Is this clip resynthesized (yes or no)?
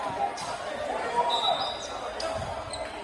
no